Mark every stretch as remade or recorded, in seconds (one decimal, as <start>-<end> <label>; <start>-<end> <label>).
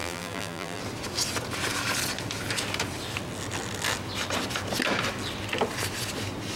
0.0-0.8 remade; 0.8-6.6 recorded